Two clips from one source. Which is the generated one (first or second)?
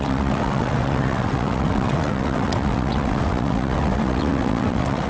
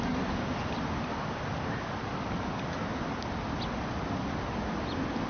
first